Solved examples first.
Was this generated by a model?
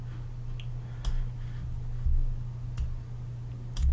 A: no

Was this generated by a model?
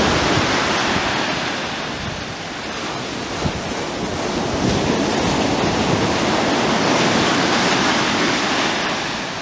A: no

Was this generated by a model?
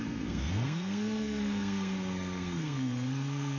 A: yes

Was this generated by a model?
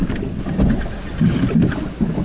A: no